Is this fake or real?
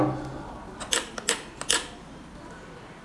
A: real